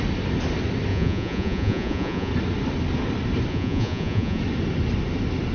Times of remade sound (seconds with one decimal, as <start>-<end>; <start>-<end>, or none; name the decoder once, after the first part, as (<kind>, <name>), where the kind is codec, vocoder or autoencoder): 0.9-2.3 (vocoder, Vocos); 3.5-4.4